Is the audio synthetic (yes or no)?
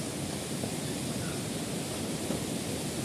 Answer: no